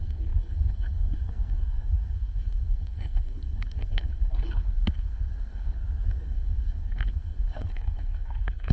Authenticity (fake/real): fake